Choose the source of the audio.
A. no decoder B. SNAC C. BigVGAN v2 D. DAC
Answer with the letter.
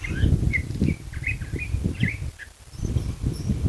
A